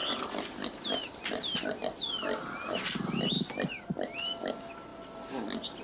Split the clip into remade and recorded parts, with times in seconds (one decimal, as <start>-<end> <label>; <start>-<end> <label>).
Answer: 0.0-5.8 recorded